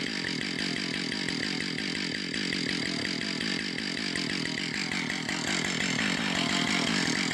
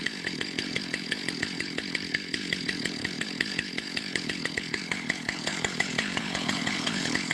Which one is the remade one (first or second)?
second